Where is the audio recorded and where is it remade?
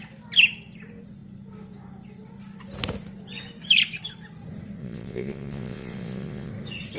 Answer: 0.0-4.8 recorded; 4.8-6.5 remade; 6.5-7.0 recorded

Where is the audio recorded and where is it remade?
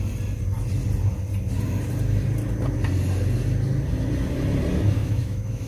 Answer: 0.0-5.0 recorded; 5.0-5.7 remade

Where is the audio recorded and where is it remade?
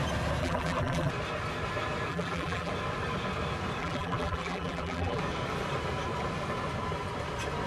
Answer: 0.0-0.4 recorded; 0.4-1.1 remade; 1.1-2.1 recorded; 2.1-2.7 remade; 2.7-3.8 recorded; 3.8-5.2 remade; 5.2-7.7 recorded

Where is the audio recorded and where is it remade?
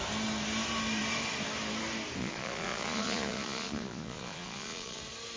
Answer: 0.0-2.2 recorded; 2.2-5.0 remade; 5.0-5.4 recorded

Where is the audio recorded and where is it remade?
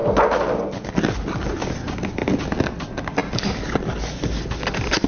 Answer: 0.0-5.1 recorded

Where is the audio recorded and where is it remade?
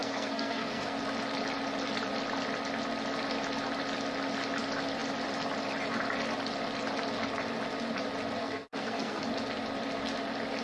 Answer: 0.0-1.0 remade; 1.0-8.4 recorded; 8.4-9.2 remade; 9.2-10.6 recorded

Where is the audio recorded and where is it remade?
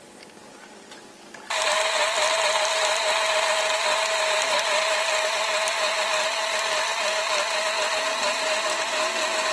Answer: 0.0-0.4 recorded; 0.4-5.0 remade; 5.0-9.5 recorded